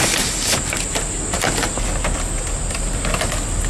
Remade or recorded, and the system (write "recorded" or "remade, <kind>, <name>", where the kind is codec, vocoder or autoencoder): recorded